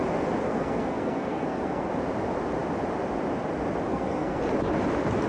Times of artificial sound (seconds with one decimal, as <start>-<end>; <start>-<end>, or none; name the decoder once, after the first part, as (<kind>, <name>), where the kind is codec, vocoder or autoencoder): 0.4-1.9 (codec, SNAC); 3.9-4.4

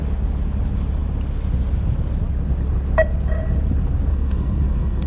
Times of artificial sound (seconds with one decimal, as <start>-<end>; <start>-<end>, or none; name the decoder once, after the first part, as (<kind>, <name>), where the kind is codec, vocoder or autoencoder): 4.1-5.1 (codec, SNAC)

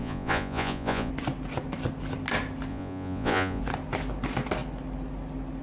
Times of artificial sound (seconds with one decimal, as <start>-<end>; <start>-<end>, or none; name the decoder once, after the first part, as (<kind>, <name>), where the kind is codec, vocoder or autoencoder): 0.0-1.1 (vocoder, Vocos); 2.7-3.6

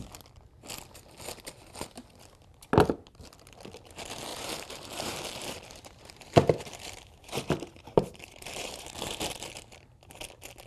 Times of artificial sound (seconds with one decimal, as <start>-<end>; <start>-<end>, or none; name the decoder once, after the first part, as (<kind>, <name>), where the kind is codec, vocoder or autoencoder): 4.3-9.5 (vocoder, BigVGAN v2)